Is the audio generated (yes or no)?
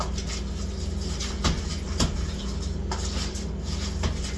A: no